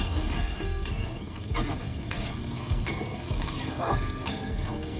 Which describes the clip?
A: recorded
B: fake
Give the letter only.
B